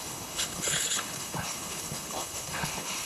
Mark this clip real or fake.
fake